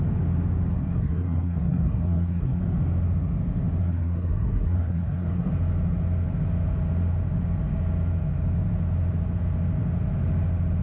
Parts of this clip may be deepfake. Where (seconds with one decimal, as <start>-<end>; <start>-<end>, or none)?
0.7-2.6; 3.8-5.5